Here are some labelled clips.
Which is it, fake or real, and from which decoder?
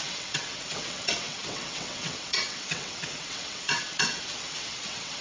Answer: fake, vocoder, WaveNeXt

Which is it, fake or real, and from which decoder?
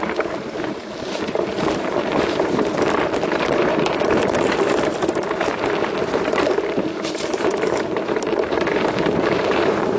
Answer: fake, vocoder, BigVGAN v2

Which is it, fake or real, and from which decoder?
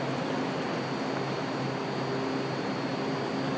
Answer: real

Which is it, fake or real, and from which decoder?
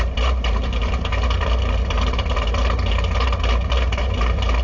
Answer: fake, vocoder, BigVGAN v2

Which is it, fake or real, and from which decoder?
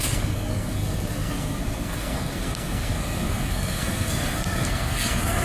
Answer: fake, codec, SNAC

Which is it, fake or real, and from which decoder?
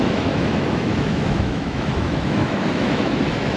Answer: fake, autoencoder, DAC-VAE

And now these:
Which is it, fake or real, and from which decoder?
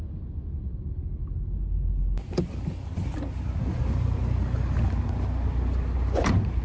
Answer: real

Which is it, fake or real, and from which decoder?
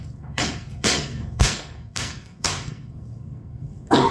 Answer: fake, codec, SNAC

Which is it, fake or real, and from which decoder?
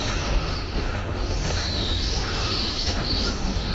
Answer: fake, autoencoder, DAC-VAE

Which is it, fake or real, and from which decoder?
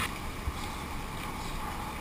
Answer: real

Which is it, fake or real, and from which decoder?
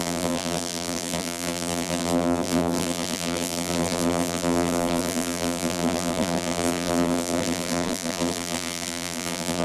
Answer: fake, vocoder, BigVGAN v2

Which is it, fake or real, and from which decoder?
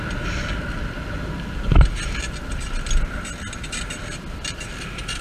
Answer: real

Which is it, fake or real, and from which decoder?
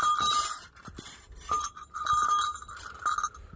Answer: real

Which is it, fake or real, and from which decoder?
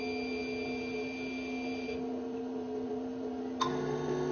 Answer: real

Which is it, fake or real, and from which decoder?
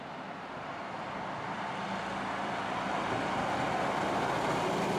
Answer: real